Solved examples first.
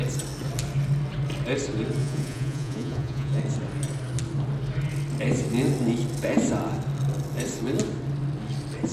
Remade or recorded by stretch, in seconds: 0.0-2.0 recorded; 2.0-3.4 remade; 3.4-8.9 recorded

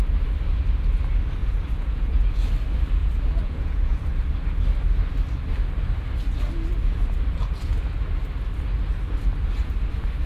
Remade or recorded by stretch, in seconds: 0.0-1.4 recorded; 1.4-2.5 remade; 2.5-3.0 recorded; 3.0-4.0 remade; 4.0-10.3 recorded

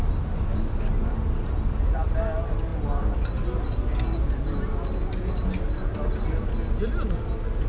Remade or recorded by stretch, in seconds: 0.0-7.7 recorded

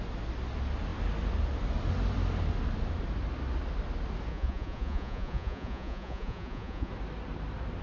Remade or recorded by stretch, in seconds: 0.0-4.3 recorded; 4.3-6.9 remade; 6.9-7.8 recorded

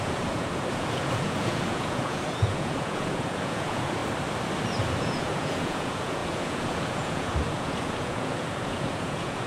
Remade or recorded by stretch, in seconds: 0.0-4.0 remade; 4.0-5.0 recorded; 5.0-9.5 remade

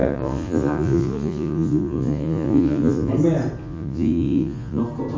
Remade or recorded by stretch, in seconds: 0.0-3.1 remade; 3.1-3.6 recorded; 3.6-4.8 remade; 4.8-5.2 recorded

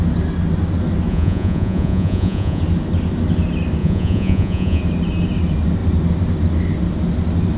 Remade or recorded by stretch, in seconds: 0.0-1.1 recorded; 1.1-2.6 remade; 2.6-3.8 recorded; 3.8-4.8 remade; 4.8-7.6 recorded